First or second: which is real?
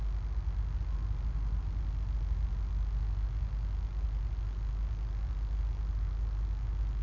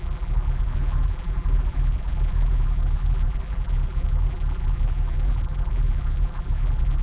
first